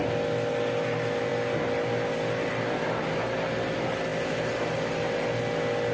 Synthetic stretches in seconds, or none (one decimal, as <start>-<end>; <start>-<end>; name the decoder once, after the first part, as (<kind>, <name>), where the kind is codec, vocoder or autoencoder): none